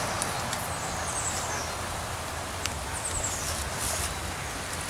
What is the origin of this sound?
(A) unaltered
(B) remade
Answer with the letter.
A